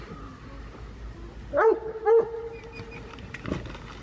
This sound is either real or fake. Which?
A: real